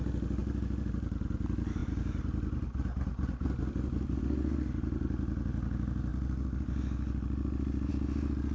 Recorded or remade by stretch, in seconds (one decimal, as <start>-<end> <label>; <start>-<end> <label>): 0.0-0.4 recorded; 0.4-1.3 remade; 1.3-8.5 recorded